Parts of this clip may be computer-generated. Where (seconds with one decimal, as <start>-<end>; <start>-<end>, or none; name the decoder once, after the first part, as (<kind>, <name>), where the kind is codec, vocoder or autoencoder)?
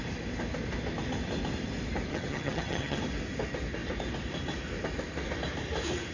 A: 2.1-3.0 (vocoder, HiFi-GAN)